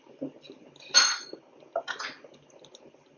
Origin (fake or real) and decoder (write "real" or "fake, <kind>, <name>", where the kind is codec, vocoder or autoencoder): real